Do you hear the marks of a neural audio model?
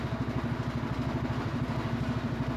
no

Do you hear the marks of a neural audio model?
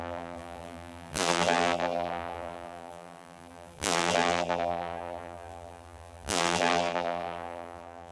yes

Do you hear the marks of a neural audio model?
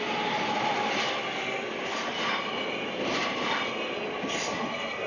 no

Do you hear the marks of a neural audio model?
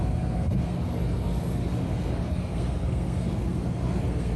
yes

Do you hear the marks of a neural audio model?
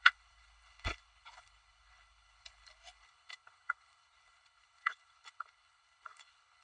yes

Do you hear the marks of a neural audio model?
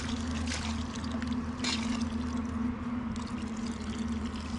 no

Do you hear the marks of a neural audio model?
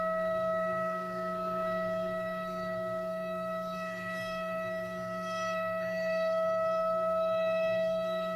yes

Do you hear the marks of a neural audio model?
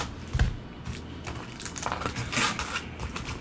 no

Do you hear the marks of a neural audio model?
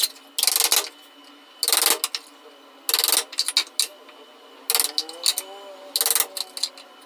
no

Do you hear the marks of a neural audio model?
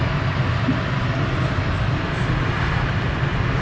no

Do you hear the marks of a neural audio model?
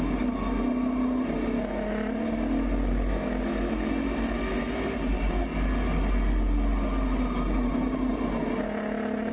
no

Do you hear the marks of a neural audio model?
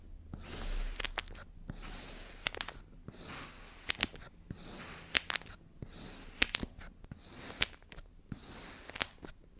no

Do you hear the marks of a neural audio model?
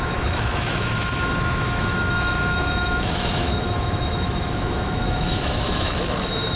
yes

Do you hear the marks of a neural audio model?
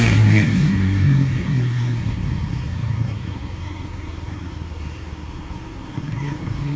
yes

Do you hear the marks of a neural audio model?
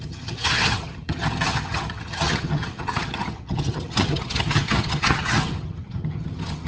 yes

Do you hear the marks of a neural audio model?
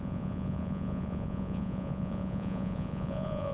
yes